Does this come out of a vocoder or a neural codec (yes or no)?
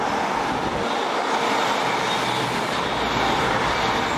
no